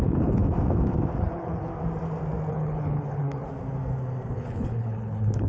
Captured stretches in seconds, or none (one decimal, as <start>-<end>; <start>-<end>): 0.4-1.2; 1.7-2.5; 3.5-4.3